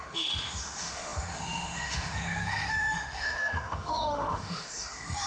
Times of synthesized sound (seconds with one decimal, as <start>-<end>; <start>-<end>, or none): 0.0-5.3